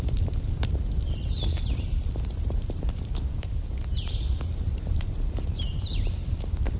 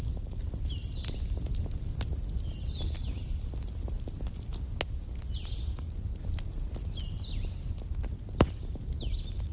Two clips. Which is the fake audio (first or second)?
first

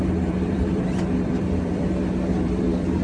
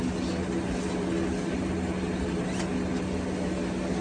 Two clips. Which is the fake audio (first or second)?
first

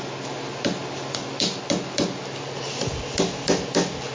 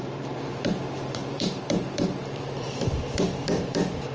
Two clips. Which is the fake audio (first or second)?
second